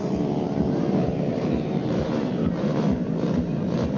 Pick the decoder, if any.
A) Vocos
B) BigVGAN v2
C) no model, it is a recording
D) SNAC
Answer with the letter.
B